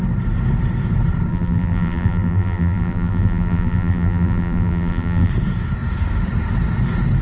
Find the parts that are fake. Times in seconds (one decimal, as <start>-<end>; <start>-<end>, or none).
1.3-5.3